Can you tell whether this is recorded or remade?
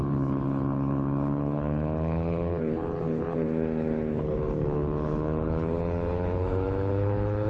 remade